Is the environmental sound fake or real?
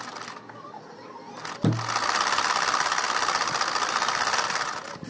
real